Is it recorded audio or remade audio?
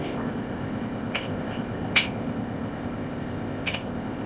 remade